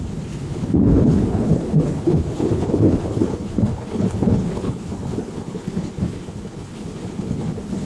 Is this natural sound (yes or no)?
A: no